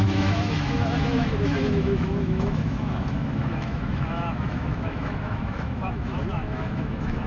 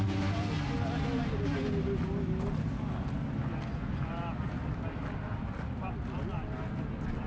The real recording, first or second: second